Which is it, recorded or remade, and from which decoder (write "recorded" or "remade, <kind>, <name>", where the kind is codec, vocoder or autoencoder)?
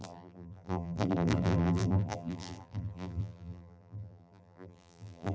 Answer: remade, vocoder, BigVGAN v2